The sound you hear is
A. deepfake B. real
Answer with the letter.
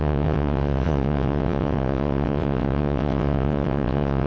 A